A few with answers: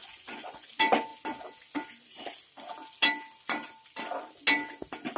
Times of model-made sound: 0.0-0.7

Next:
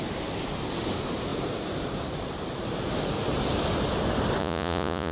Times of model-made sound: 4.4-5.1

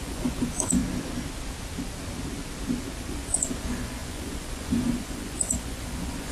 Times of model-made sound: 0.0-0.8; 3.1-6.3

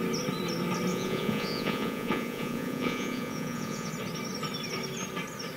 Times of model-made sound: 0.9-3.9